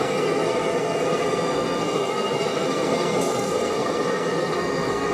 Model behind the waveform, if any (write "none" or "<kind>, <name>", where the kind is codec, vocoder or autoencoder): codec, SNAC